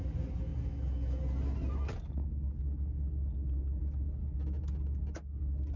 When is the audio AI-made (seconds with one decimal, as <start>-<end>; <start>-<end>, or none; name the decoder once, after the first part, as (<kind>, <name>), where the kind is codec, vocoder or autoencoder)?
none